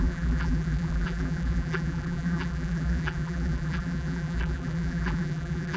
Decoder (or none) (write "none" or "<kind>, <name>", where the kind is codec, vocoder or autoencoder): vocoder, BigVGAN v2